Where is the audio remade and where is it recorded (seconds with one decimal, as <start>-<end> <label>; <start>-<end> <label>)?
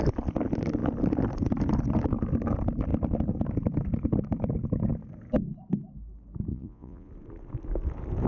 0.0-6.5 recorded; 6.5-7.1 remade; 7.1-8.3 recorded